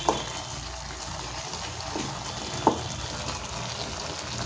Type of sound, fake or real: real